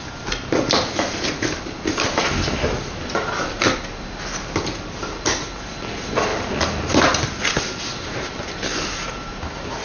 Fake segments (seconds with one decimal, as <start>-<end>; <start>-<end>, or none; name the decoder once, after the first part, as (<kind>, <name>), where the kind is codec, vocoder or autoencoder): none